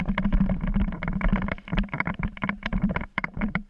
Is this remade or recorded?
remade